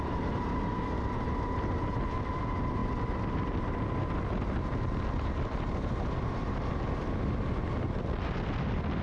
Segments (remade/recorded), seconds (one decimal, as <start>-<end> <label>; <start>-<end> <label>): 0.0-9.0 recorded